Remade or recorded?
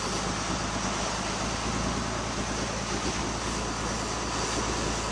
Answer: recorded